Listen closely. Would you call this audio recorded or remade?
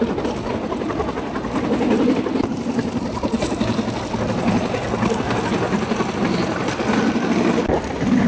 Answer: recorded